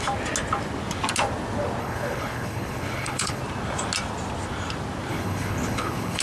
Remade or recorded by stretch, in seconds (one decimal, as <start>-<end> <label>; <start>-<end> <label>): 0.0-1.8 recorded; 1.8-3.4 remade; 3.4-5.1 recorded; 5.1-6.2 remade